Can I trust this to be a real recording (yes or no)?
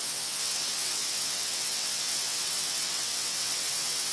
no